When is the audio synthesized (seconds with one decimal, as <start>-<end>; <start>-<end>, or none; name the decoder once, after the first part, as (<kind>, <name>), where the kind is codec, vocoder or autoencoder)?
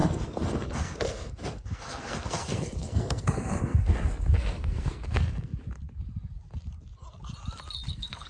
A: 0.0-5.5 (codec, SNAC); 7.9-8.3